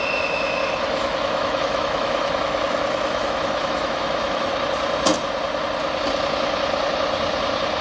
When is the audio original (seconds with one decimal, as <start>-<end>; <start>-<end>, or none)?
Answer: 0.0-1.0; 4.5-7.8